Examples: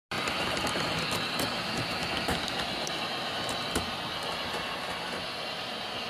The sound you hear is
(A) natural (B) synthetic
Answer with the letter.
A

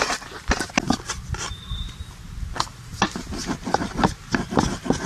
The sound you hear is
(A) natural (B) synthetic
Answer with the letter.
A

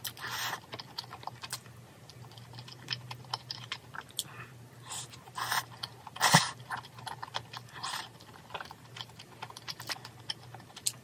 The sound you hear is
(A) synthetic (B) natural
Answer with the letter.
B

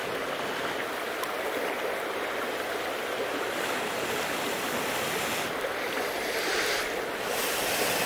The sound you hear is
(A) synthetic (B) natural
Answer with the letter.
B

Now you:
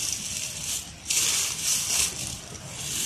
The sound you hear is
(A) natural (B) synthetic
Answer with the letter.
A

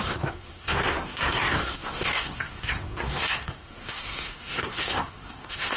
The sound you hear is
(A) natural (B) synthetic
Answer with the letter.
B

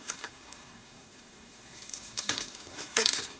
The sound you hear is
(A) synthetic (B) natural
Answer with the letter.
A